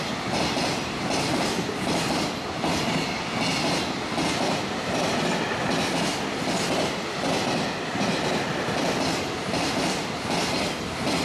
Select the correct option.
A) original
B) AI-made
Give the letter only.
A